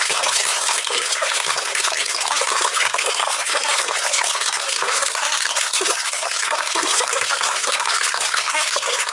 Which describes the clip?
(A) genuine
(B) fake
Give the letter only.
B